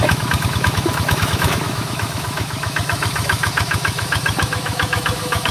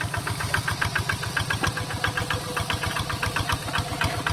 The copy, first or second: first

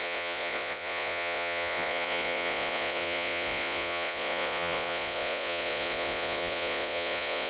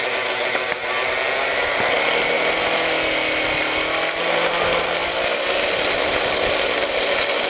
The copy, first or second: first